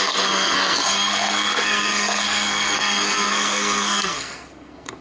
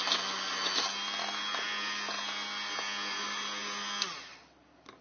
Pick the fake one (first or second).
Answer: first